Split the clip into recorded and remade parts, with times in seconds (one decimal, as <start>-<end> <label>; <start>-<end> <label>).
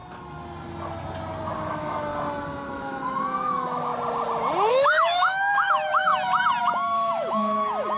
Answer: 0.0-1.7 recorded; 1.7-2.1 remade; 2.1-2.7 recorded; 2.7-3.9 remade; 3.9-4.7 recorded; 4.7-6.1 remade; 6.1-6.6 recorded; 6.6-8.0 remade